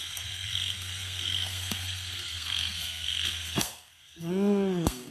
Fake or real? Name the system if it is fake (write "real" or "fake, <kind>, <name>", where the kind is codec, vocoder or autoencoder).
fake, codec, SNAC